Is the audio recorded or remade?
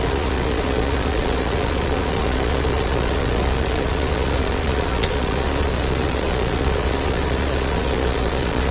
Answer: remade